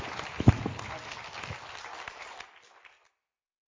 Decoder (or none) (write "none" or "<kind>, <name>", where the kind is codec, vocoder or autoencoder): none